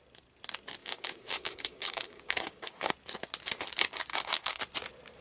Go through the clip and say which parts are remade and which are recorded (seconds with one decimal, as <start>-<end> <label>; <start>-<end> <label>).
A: 0.0-0.8 recorded; 0.8-2.9 remade; 2.9-4.1 recorded; 4.1-4.6 remade; 4.6-5.2 recorded